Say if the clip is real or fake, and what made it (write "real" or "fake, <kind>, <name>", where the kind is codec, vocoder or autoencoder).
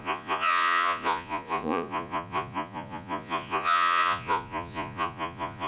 fake, vocoder, Vocos